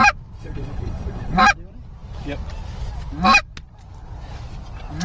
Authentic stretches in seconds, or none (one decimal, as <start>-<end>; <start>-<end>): 0.0-0.4; 1.4-5.0